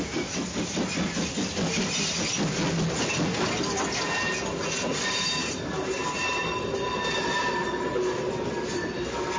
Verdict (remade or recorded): recorded